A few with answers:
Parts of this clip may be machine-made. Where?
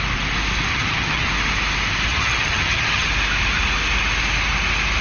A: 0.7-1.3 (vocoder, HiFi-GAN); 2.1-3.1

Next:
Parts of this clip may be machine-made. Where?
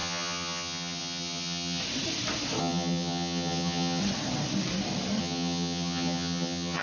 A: 0.0-1.8 (vocoder, HiFi-GAN); 2.6-4.0; 5.2-6.8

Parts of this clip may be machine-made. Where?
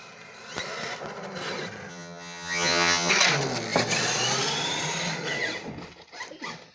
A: 1.9-3.1 (vocoder, HiFi-GAN)